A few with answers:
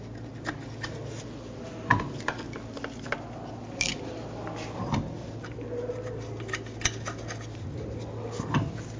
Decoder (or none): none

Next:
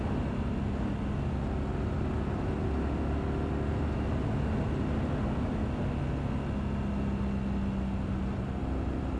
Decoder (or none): none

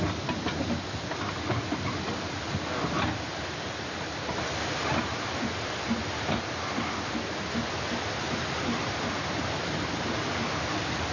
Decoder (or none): none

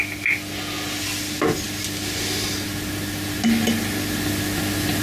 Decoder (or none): none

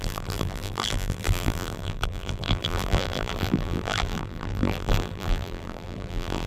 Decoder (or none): vocoder, BigVGAN v2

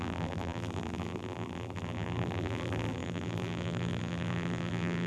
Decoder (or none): vocoder, BigVGAN v2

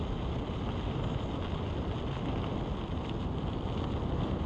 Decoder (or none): none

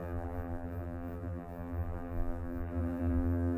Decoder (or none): vocoder, BigVGAN v2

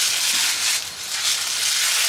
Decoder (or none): none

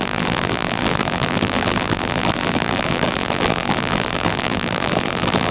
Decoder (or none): vocoder, BigVGAN v2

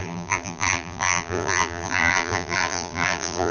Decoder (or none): vocoder, BigVGAN v2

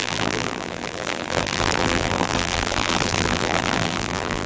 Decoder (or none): vocoder, BigVGAN v2